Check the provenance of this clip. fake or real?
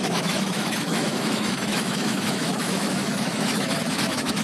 fake